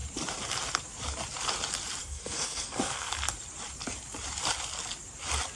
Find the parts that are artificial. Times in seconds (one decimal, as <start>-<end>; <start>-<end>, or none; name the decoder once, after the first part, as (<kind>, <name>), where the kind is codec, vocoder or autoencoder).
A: 2.0-3.1 (codec, SNAC)

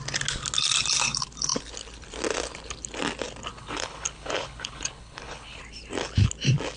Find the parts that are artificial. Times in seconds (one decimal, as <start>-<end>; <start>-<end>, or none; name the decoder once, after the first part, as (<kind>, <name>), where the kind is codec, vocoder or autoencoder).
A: 3.5-5.6 (codec, HILCodec)

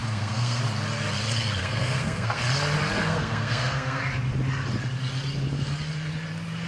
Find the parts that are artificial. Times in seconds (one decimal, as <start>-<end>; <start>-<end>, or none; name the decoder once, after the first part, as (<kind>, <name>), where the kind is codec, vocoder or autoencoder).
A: 0.0-0.6 (codec, SNAC); 1.6-2.4; 3.0-4.0

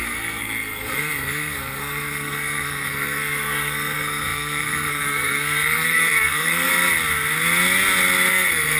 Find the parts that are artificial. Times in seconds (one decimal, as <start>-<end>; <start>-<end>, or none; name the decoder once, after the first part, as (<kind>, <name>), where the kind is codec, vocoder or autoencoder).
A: 0.0-6.7 (codec, SNAC); 8.3-8.8